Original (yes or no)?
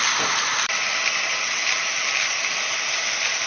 no